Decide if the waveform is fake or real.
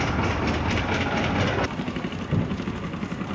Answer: real